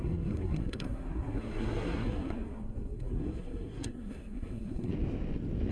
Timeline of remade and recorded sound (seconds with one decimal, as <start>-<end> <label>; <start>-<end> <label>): 0.0-4.9 remade; 4.9-5.7 recorded